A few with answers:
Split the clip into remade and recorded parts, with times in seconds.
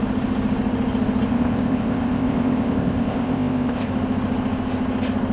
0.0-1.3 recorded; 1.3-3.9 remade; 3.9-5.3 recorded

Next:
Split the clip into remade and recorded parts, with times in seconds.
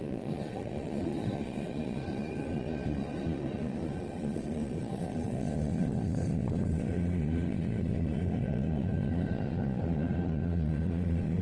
0.0-11.4 remade